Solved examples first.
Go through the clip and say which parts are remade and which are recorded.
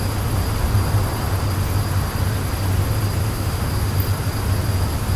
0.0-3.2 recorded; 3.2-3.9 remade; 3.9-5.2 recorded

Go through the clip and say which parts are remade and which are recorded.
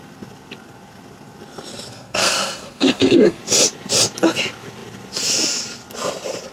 0.0-1.9 recorded; 1.9-3.4 remade; 3.4-6.5 recorded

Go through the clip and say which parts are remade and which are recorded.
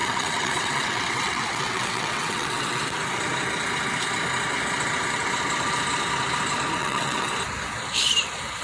0.0-2.8 remade; 2.8-6.8 recorded; 6.8-7.3 remade; 7.3-8.6 recorded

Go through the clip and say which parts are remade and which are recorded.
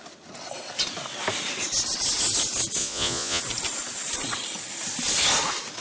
0.0-2.8 recorded; 2.8-3.4 remade; 3.4-5.8 recorded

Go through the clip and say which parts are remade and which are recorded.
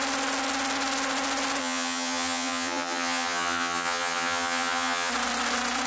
0.0-1.6 recorded; 1.6-5.1 remade; 5.1-5.9 recorded